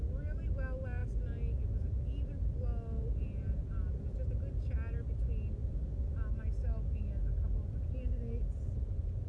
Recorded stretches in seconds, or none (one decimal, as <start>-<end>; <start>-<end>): 0.0-9.3